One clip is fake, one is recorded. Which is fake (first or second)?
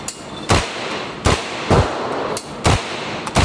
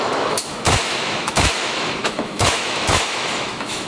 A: second